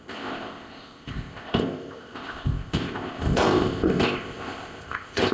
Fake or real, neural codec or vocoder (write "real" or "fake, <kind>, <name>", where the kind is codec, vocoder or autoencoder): fake, codec, ZipCodec